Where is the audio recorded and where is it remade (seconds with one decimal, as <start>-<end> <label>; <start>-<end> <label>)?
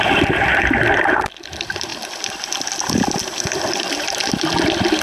0.0-5.0 recorded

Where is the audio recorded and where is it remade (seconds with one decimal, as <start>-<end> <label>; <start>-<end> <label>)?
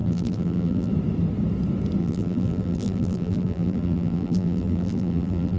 0.0-0.9 remade; 0.9-2.0 recorded; 2.0-5.6 remade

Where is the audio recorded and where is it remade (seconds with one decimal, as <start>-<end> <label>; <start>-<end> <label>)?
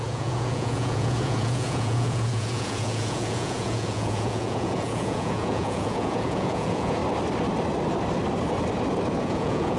0.0-7.0 remade; 7.0-9.2 recorded; 9.2-9.8 remade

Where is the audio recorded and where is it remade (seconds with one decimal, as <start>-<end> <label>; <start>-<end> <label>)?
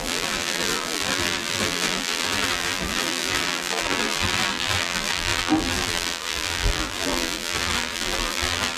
0.0-8.8 remade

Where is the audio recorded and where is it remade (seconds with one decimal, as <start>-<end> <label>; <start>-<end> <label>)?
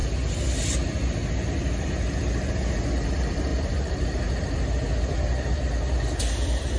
0.0-3.5 recorded; 3.5-4.2 remade; 4.2-6.8 recorded